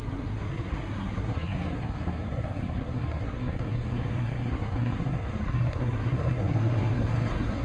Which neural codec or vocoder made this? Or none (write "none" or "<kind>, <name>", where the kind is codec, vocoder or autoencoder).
codec, SNAC